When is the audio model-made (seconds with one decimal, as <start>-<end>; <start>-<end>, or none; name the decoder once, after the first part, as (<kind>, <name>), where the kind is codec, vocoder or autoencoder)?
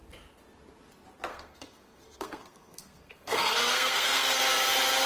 1.3-4.4 (codec, SNAC)